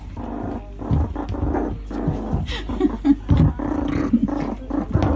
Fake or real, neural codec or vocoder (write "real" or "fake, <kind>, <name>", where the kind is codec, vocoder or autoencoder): real